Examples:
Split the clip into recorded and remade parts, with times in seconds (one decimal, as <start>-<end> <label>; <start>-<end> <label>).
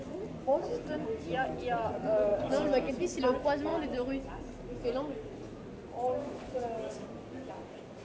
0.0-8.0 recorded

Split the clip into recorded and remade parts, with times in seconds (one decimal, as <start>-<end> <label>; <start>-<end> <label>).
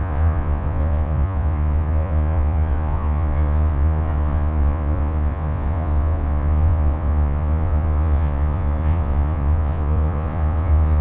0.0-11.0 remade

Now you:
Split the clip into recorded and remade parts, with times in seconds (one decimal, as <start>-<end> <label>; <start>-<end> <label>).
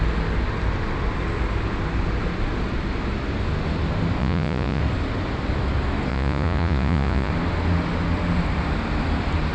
0.0-4.2 recorded; 4.2-4.8 remade; 4.8-6.1 recorded; 6.1-7.3 remade; 7.3-9.5 recorded